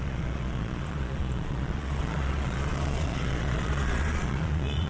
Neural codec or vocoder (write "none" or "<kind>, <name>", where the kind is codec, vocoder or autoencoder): vocoder, Vocos